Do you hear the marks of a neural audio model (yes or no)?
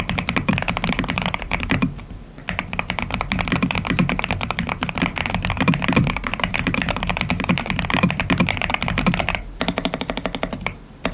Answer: yes